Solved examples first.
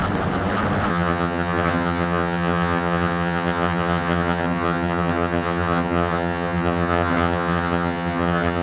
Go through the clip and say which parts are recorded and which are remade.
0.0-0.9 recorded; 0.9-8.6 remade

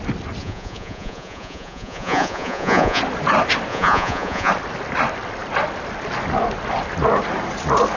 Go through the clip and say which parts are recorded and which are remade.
0.0-0.4 recorded; 0.4-3.0 remade; 3.0-3.7 recorded; 3.7-4.5 remade; 4.5-8.0 recorded

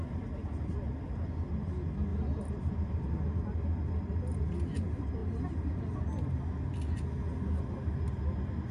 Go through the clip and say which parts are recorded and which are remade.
0.0-2.1 recorded; 2.1-3.4 remade; 3.4-8.7 recorded

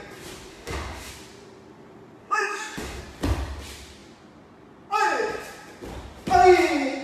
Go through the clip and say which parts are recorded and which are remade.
0.0-0.5 recorded; 0.5-1.1 remade; 1.1-2.2 recorded; 2.2-3.0 remade; 3.0-7.0 recorded

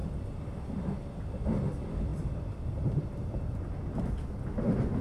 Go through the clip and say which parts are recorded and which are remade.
0.0-2.1 recorded; 2.1-4.1 remade; 4.1-5.0 recorded

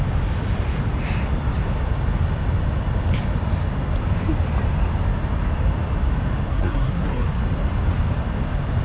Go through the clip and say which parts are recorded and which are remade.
0.0-6.5 recorded; 6.5-7.4 remade; 7.4-8.8 recorded

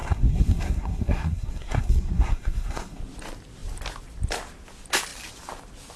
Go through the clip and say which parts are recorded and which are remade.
0.0-3.0 remade; 3.0-6.0 recorded

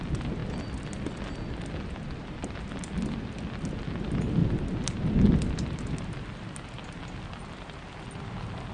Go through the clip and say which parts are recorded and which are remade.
0.0-8.7 recorded